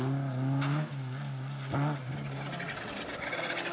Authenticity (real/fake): real